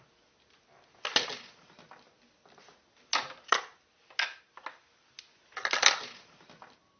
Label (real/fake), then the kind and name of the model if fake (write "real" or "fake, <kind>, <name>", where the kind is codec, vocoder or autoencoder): real